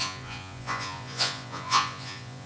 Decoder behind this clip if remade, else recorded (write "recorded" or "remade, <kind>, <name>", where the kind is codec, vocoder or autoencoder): remade, vocoder, Vocos